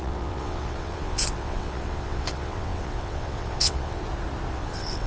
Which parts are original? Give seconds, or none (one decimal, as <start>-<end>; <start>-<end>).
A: 4.0-4.5